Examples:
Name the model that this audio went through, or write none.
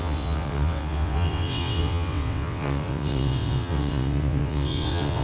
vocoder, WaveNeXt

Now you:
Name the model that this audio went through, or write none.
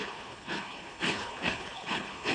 codec, HILCodec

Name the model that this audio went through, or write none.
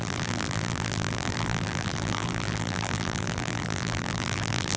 vocoder, BigVGAN v2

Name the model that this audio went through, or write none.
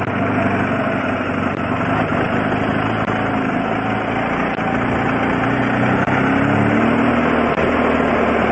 none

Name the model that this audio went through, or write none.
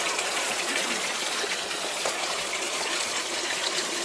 vocoder, Vocos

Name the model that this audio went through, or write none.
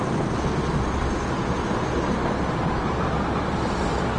none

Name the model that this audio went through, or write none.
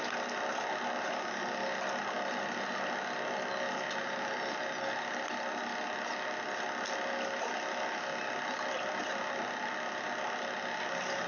none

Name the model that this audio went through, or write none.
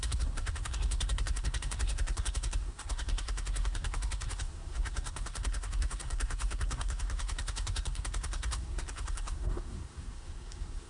codec, SNAC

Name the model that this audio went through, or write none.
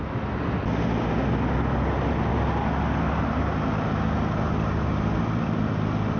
none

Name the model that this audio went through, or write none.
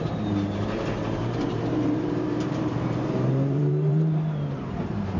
vocoder, BigVGAN v2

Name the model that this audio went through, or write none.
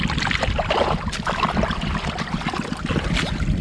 none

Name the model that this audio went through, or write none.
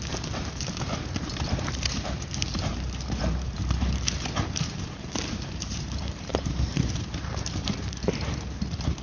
vocoder, BigVGAN v2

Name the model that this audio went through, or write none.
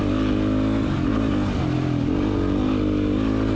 none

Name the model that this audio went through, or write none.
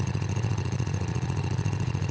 vocoder, Vocos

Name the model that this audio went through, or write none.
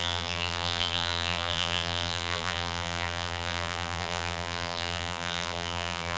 vocoder, BigVGAN v2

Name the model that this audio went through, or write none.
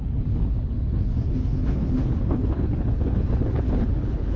codec, HILCodec